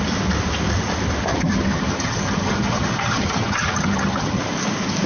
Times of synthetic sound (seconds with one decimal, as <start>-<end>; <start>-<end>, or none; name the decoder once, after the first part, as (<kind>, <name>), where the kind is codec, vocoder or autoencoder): 1.3-4.4 (vocoder, HiFi-GAN)